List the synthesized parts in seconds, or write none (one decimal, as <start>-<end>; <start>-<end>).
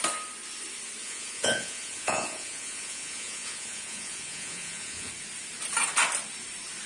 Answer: 1.0-5.1